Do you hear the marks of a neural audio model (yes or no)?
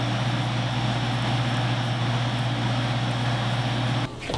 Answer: no